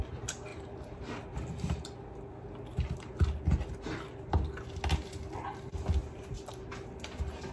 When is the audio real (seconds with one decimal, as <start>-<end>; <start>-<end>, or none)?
0.0-0.5; 1.2-6.0; 6.7-7.5